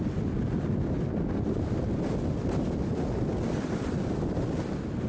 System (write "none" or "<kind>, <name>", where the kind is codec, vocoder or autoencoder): none